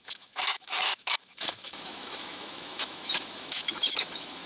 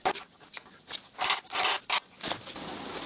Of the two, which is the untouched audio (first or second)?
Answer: second